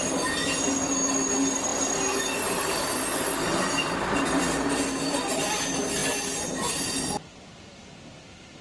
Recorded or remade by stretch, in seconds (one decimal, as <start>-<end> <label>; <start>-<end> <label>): 0.0-8.6 recorded